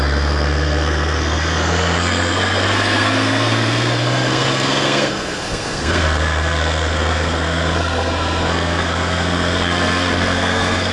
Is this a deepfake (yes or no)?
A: yes